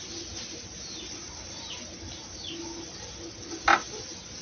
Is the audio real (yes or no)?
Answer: yes